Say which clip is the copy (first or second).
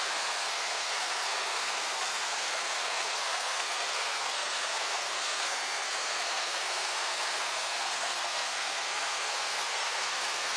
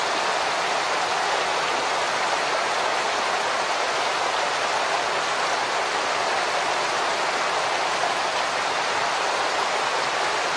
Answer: first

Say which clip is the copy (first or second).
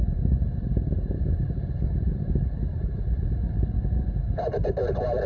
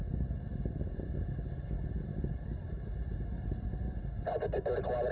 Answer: first